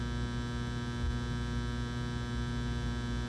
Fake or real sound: real